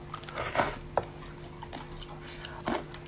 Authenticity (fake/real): real